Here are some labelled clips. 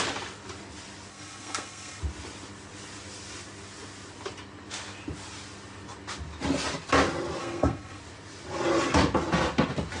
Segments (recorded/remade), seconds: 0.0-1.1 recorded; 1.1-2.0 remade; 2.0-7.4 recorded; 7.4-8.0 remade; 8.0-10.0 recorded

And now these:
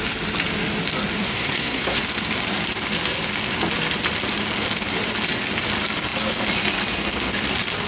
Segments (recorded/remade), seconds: 0.0-1.2 recorded; 1.2-2.0 remade; 2.0-7.9 recorded